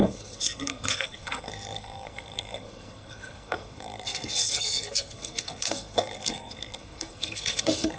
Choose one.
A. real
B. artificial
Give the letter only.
B